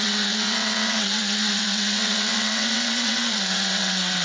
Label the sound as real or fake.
fake